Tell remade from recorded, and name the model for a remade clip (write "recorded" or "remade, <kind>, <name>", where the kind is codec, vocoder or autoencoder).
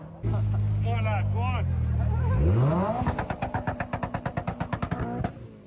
recorded